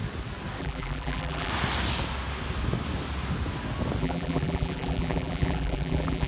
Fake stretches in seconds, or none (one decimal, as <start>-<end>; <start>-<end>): 0.6-1.5; 4.0-6.3